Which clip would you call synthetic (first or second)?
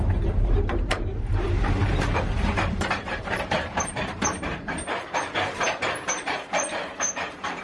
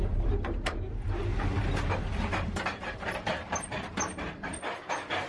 first